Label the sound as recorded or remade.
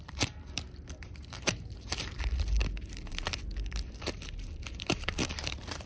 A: remade